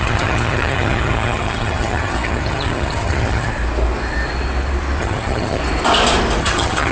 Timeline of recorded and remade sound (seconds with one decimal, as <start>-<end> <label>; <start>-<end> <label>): 0.0-3.5 remade; 3.5-5.0 recorded; 5.0-5.6 remade; 5.6-6.4 recorded; 6.4-6.9 remade